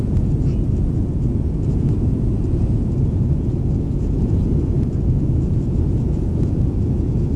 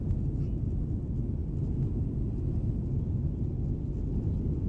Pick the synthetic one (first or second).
first